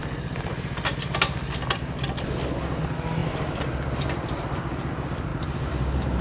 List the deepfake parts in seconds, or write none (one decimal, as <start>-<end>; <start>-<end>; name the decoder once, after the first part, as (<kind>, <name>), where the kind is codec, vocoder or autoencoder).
5.3-6.2 (vocoder, BigVGAN v2)